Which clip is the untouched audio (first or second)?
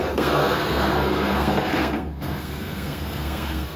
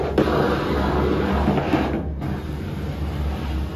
second